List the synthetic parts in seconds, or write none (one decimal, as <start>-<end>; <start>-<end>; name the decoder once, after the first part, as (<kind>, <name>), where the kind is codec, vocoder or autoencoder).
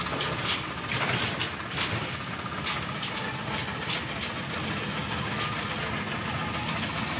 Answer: none